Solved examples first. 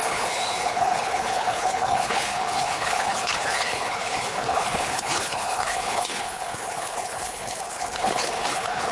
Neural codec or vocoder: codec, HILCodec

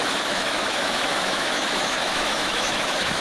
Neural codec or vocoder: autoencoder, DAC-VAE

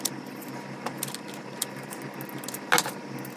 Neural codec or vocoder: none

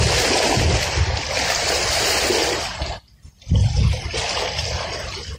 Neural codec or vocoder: none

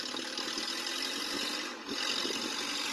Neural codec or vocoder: none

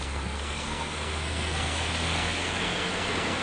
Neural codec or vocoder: codec, SNAC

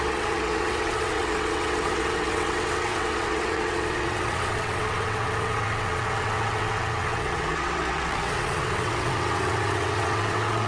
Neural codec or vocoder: vocoder, WaveNeXt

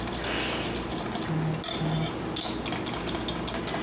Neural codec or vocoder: none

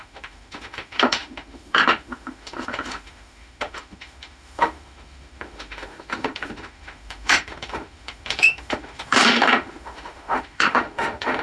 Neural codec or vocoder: autoencoder, DAC-VAE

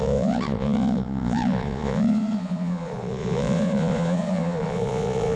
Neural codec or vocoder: vocoder, Vocos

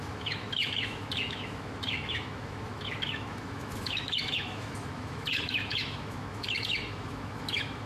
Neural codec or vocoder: autoencoder, DAC-VAE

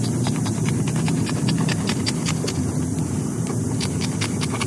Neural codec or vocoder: none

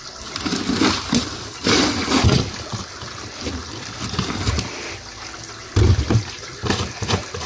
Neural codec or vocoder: none